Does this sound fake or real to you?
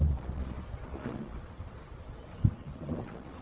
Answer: fake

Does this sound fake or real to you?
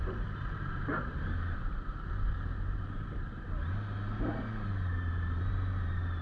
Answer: fake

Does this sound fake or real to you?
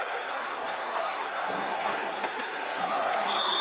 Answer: fake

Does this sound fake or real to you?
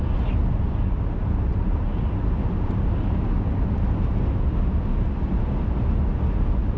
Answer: real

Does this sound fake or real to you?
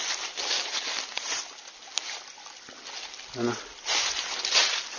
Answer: real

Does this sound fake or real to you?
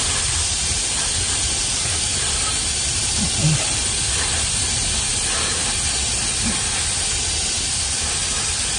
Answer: real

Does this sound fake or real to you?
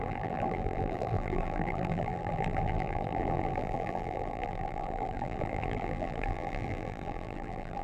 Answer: fake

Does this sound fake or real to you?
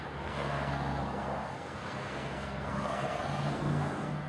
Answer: fake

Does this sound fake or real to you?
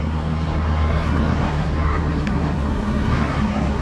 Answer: fake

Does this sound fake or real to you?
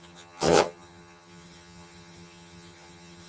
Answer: fake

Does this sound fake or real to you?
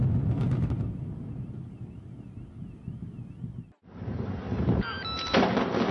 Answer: real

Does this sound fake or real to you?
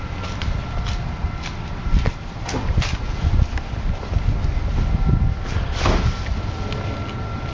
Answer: real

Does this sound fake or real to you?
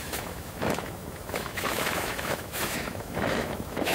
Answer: fake